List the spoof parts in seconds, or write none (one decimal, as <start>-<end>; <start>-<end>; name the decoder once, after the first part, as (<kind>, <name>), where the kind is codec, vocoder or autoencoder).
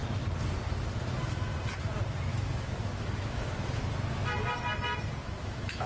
2.3-4.0 (autoencoder, DAC-VAE); 5.2-5.9